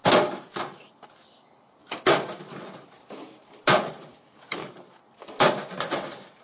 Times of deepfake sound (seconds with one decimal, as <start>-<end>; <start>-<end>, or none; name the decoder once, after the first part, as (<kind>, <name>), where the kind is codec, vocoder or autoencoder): 1.8-2.4 (codec, DAC); 4.1-4.7